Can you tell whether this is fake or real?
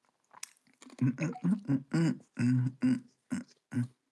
real